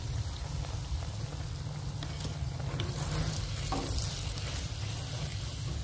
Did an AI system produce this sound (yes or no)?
no